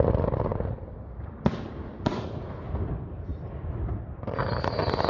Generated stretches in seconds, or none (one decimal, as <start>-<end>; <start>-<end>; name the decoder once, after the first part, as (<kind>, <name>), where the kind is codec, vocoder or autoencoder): none